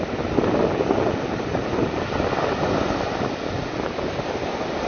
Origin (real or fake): real